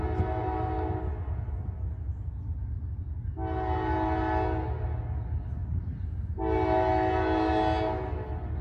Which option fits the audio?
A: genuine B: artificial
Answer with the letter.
A